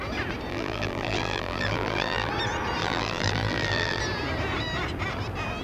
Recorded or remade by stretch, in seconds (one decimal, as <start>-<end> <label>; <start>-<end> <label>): 0.0-0.5 recorded; 0.5-2.3 remade; 2.3-2.8 recorded; 2.8-4.0 remade; 4.0-5.6 recorded